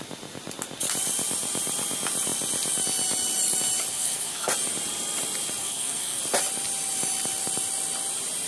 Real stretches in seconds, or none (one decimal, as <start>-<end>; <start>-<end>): 0.0-3.9; 4.5-5.6; 6.2-8.5